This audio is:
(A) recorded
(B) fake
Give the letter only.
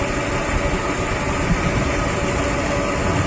A